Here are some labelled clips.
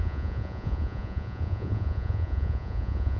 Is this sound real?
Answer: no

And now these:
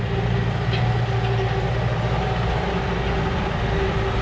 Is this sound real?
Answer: yes